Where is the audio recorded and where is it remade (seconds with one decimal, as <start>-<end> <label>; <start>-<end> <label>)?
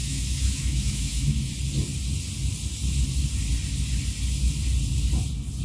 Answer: 0.0-1.5 remade; 1.5-5.6 recorded